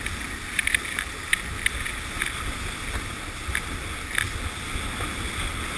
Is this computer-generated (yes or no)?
no